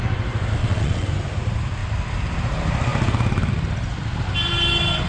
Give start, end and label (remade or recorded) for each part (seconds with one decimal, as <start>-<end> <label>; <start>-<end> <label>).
0.0-0.6 recorded; 0.6-1.1 remade; 1.1-5.1 recorded